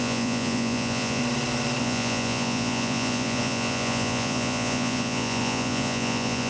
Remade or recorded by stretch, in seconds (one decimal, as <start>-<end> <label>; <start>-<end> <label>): 0.0-1.2 remade; 1.2-1.8 recorded; 1.8-6.5 remade